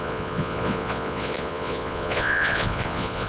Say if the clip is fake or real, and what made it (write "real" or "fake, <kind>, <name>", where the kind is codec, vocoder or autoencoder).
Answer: fake, vocoder, Vocos